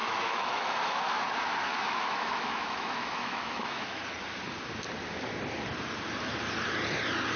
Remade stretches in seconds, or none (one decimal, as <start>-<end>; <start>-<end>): 0.0-1.2; 1.7-4.0